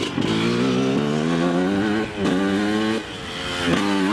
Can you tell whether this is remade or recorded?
recorded